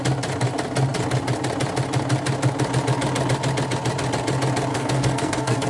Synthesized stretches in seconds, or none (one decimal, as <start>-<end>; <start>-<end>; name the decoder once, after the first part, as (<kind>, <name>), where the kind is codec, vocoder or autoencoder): 4.7-5.7 (codec, SNAC)